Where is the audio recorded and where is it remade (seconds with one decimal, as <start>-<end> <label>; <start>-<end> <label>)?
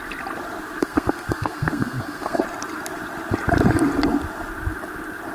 0.0-0.8 recorded; 0.8-2.4 remade; 2.4-5.3 recorded